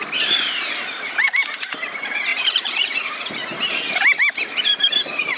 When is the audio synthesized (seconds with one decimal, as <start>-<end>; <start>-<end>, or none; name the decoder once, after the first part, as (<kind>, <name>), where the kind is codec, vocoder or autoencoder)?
1.2-1.9 (vocoder, BigVGAN v2); 2.3-3.1